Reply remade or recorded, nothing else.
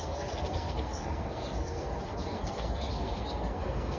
remade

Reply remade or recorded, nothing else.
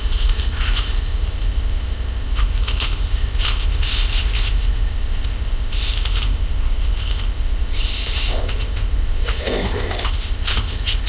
remade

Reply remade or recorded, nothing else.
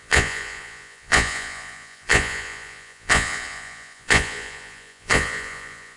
remade